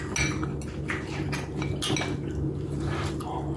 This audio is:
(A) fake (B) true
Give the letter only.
B